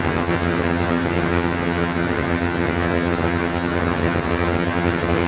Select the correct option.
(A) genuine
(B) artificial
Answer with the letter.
B